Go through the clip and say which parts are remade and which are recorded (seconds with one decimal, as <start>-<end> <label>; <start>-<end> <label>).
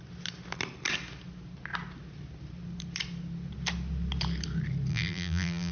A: 0.0-4.9 recorded; 4.9-5.7 remade